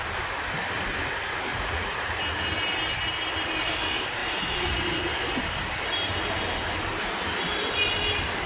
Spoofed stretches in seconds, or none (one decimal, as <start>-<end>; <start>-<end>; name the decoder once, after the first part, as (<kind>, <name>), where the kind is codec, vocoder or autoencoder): 1.5-2.1 (vocoder, Vocos)